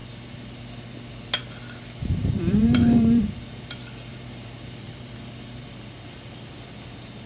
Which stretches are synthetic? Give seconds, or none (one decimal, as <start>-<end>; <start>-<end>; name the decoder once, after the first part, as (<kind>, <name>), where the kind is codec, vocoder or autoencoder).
2.2-6.5 (vocoder, BigVGAN v2)